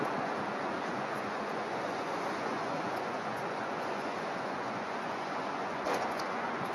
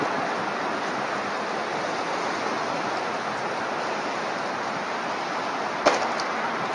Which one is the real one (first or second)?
second